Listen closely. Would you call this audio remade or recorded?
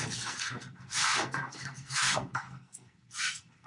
remade